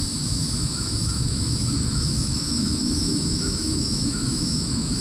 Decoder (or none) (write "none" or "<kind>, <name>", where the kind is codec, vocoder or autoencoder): autoencoder, DAC-VAE